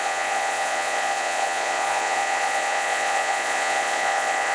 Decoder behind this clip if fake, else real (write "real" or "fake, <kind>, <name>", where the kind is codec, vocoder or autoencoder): fake, vocoder, Vocos